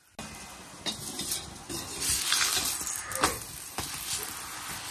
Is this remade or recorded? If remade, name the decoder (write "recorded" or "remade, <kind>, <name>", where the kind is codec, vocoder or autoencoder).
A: recorded